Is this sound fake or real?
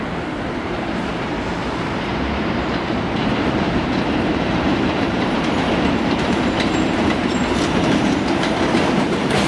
fake